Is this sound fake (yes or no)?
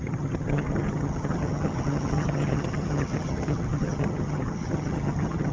yes